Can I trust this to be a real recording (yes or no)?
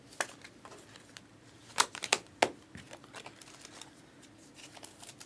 yes